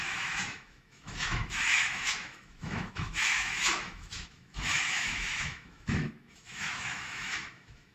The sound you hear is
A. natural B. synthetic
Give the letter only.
B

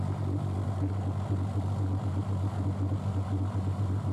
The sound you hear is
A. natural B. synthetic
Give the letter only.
A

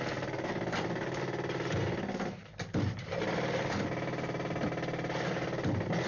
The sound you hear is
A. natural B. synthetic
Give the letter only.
A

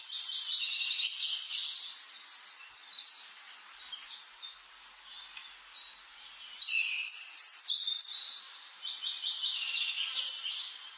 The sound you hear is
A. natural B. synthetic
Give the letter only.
A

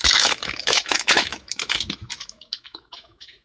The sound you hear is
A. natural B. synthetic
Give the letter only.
B